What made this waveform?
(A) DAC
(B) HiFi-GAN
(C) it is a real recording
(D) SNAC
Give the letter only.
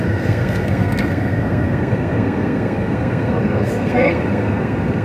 D